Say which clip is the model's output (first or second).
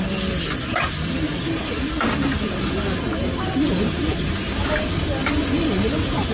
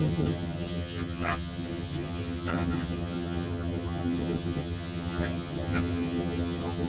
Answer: second